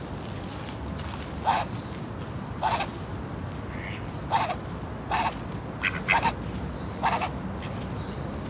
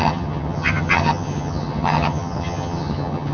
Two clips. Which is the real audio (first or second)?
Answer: first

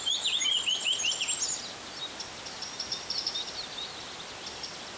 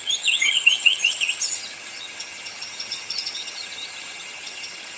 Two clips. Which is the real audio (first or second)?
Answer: first